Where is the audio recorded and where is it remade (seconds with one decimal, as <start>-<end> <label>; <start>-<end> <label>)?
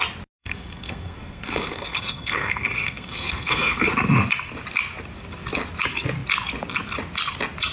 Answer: 0.0-0.4 recorded; 0.4-3.9 remade; 3.9-7.7 recorded